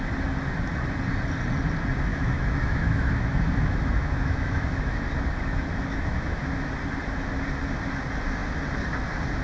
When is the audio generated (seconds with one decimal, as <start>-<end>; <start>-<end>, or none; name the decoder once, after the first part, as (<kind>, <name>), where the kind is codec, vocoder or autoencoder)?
2.1-6.7 (autoencoder, DAC-VAE)